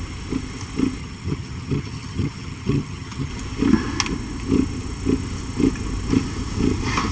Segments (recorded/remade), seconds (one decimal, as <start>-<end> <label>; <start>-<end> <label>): 0.0-1.0 recorded; 1.0-3.3 remade; 3.3-7.1 recorded